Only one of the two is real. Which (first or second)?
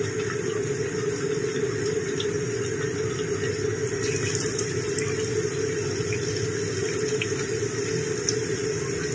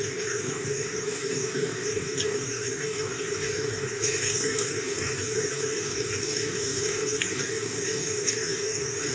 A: first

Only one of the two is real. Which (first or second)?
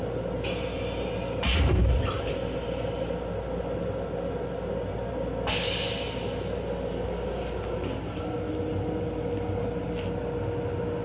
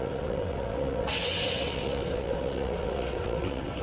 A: first